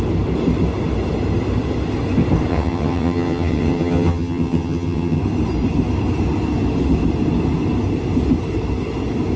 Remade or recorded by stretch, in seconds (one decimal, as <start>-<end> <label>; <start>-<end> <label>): 0.0-2.5 recorded; 2.5-5.2 remade; 5.2-9.4 recorded